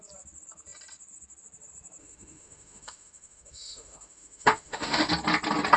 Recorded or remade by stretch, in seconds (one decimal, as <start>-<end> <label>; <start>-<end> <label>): 0.0-2.0 recorded; 2.0-5.1 remade; 5.1-5.8 recorded